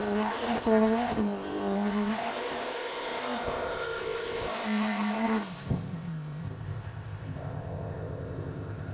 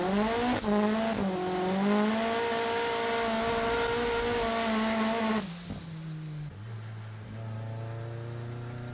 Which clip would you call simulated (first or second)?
first